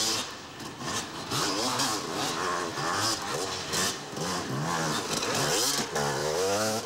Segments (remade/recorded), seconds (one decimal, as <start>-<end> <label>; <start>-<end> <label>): 0.0-6.2 recorded; 6.2-6.8 remade